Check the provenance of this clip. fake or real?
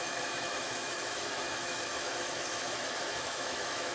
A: fake